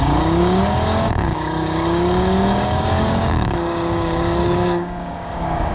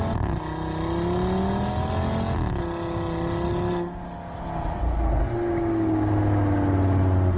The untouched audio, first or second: second